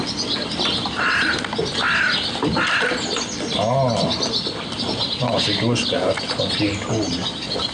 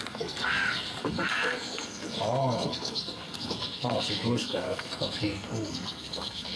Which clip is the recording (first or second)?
first